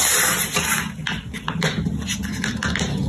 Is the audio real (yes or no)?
yes